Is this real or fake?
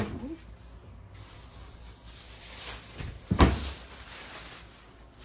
real